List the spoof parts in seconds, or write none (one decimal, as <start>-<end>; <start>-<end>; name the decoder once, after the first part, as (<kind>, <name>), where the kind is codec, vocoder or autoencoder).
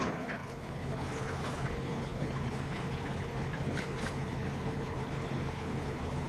0.0-6.3 (codec, HILCodec)